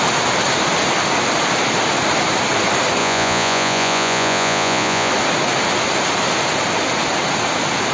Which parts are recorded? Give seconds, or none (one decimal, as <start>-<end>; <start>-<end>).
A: 0.0-3.0; 5.1-7.9